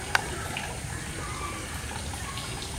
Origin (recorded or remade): remade